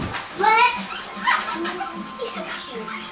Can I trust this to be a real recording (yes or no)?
yes